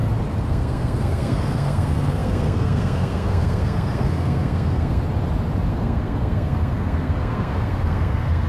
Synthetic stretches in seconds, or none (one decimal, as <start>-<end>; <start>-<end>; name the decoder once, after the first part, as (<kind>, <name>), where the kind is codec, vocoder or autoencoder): 0.5-5.0 (codec, SNAC); 5.7-8.5